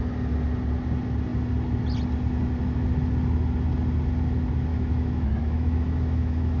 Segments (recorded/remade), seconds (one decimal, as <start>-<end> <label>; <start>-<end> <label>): 0.0-4.7 recorded; 4.7-6.6 remade